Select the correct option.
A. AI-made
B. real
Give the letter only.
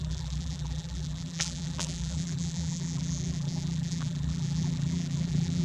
A